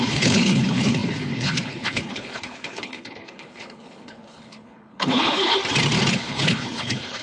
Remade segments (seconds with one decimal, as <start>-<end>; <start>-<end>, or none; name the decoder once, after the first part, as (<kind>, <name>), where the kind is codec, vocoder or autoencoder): 0.0-5.6 (codec, HILCodec); 6.1-7.2